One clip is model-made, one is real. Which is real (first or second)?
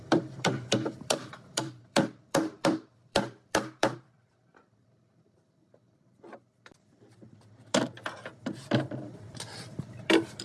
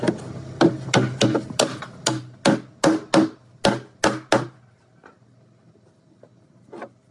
second